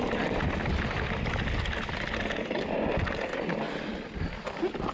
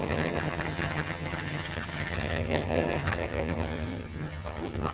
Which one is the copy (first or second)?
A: second